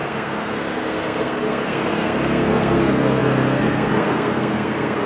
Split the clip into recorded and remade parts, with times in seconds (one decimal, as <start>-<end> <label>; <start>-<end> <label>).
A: 0.0-5.1 remade